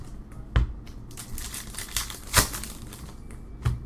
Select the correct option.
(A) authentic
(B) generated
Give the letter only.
A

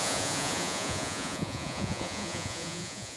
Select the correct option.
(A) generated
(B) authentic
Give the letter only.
A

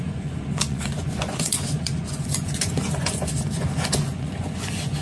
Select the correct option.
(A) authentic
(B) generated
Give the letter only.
B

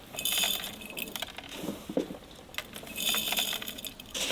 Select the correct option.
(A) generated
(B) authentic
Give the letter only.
B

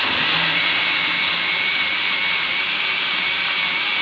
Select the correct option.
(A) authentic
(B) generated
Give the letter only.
A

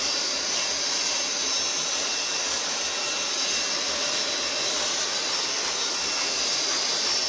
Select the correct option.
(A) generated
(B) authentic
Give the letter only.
B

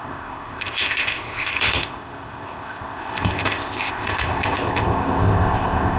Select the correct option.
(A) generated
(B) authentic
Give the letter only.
A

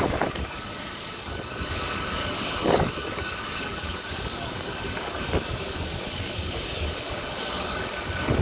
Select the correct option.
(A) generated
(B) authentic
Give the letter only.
A